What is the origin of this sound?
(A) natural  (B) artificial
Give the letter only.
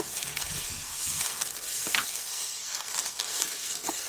B